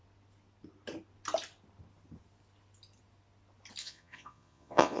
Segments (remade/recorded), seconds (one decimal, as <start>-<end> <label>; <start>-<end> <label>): 0.0-3.8 recorded; 3.8-5.0 remade